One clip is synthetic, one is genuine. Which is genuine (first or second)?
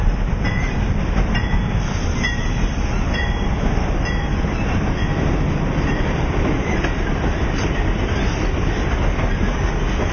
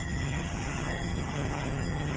first